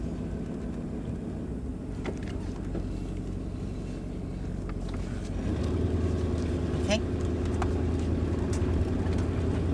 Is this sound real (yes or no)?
yes